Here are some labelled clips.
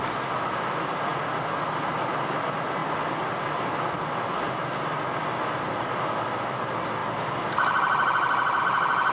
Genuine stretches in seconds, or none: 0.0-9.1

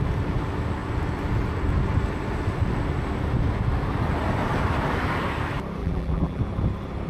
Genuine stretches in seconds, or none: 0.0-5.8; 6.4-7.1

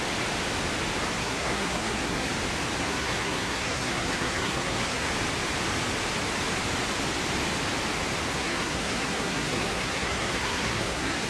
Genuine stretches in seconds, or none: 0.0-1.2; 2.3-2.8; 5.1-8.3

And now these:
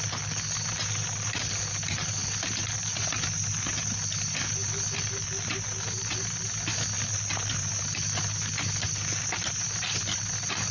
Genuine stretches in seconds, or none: 0.0-10.7

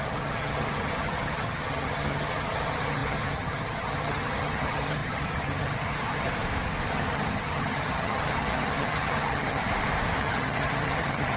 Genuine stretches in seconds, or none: 6.3-6.9; 9.7-10.2

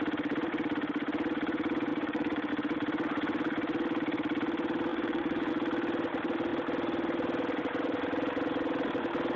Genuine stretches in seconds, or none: 0.0-1.9; 2.5-4.9; 5.5-9.4

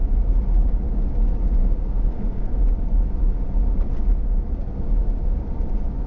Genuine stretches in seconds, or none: 0.0-1.6; 2.6-6.1